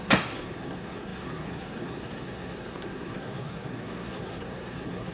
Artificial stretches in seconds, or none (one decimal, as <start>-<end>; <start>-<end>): 0.0-5.1